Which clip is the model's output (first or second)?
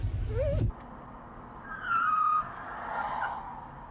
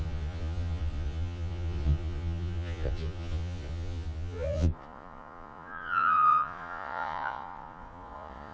second